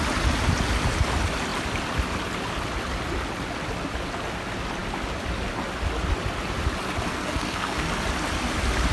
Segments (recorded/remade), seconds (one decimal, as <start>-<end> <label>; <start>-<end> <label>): 0.0-7.1 recorded; 7.1-7.9 remade; 7.9-8.9 recorded